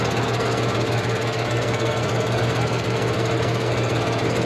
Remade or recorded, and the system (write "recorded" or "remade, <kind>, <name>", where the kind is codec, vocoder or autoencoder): remade, codec, SNAC